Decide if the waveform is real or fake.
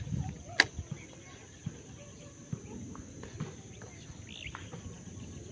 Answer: real